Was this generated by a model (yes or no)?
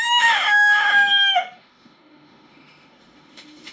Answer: yes